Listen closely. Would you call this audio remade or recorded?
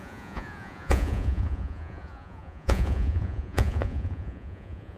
remade